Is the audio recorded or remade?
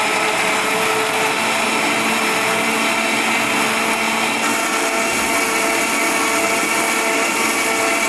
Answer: recorded